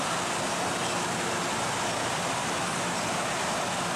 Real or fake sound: real